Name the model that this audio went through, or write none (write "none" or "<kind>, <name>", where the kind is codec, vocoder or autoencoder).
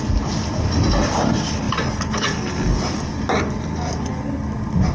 none